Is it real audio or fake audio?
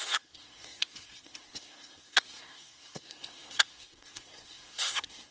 fake